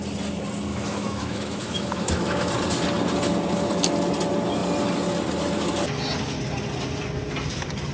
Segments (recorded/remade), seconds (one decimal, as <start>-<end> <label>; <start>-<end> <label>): 0.0-0.7 recorded; 0.7-2.5 remade; 2.5-7.9 recorded